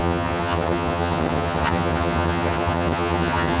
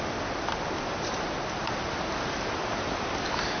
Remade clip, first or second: first